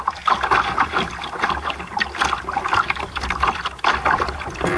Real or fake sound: real